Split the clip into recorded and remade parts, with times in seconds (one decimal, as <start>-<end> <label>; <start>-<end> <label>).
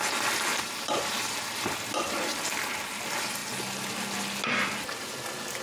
0.0-5.6 recorded